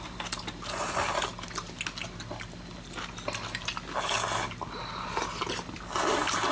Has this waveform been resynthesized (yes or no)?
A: no